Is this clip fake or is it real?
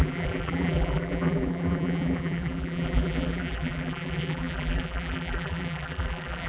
fake